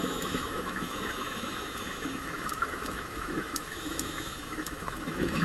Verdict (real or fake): fake